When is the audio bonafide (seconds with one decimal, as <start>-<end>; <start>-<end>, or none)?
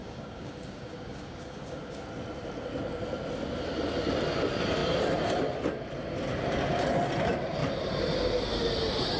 2.0-9.2